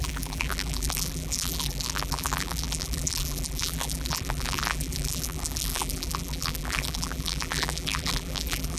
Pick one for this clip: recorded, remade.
remade